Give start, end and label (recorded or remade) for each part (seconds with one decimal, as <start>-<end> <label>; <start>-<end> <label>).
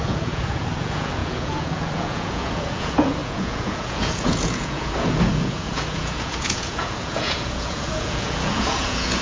0.0-9.2 remade